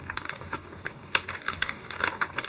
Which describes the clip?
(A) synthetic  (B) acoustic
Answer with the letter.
A